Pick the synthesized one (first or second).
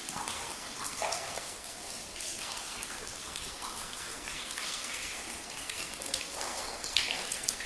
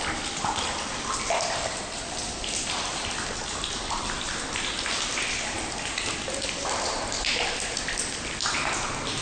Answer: first